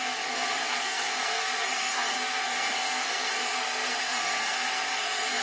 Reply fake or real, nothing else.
fake